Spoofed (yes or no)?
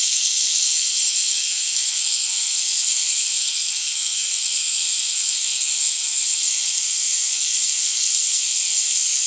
yes